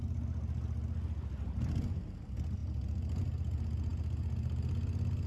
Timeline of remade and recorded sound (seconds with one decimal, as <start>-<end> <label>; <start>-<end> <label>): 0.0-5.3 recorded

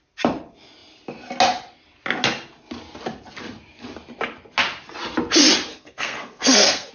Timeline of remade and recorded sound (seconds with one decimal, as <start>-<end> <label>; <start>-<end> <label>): 0.0-5.7 recorded; 5.7-6.9 remade

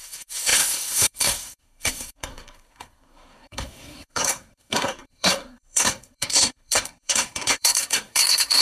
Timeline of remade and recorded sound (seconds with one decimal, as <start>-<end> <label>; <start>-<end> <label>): 0.0-8.6 remade